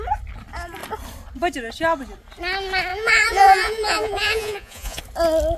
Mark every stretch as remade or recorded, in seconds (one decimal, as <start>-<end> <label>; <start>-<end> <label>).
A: 0.0-2.9 recorded; 2.9-5.0 remade; 5.0-5.6 recorded